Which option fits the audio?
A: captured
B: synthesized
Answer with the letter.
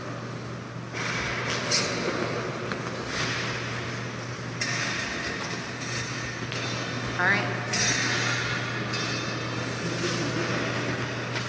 A